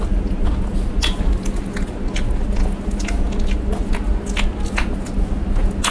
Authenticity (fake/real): real